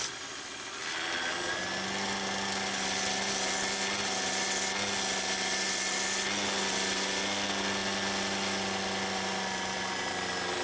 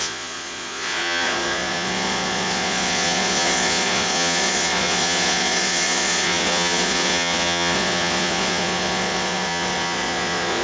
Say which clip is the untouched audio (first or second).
first